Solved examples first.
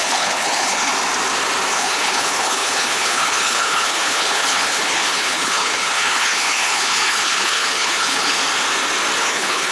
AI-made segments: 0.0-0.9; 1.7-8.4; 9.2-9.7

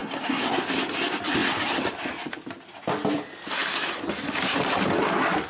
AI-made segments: 0.0-0.7

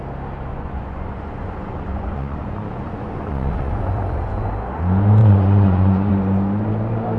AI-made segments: 0.5-4.5; 5.2-6.1

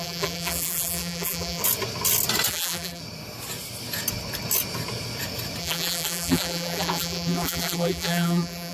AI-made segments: 0.0-1.6; 2.5-3.0; 5.6-8.7

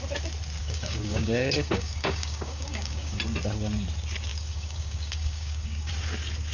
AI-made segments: 0.6-3.2; 4.3-5.9

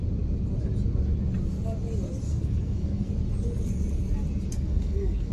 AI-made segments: 2.3-3.1; 4.5-5.3